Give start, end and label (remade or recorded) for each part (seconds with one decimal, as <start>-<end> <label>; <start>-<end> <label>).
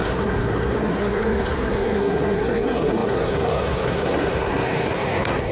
0.0-5.5 remade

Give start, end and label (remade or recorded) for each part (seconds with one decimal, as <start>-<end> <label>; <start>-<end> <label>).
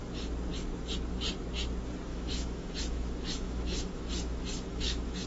0.0-2.1 recorded; 2.1-5.3 remade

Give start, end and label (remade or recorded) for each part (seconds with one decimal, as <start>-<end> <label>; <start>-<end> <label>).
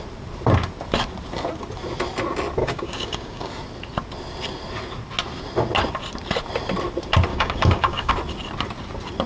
0.0-2.6 recorded; 2.6-3.5 remade; 3.5-7.3 recorded; 7.3-8.1 remade; 8.1-9.3 recorded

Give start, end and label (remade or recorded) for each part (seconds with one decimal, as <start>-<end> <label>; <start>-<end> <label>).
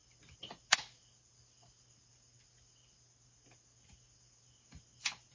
0.0-5.3 recorded